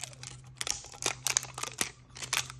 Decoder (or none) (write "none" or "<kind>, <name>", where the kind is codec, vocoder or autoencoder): none